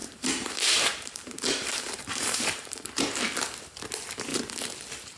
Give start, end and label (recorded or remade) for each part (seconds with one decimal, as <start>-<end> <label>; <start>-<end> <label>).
0.0-3.1 remade; 3.1-5.2 recorded